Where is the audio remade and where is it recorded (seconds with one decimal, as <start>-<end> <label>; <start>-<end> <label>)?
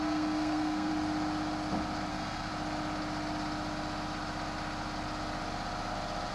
0.0-0.9 remade; 0.9-2.1 recorded; 2.1-2.5 remade; 2.5-6.3 recorded